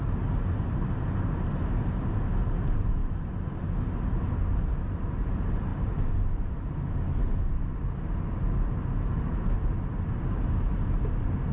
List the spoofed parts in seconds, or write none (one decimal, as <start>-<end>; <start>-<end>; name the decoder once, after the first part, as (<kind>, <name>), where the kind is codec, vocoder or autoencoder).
none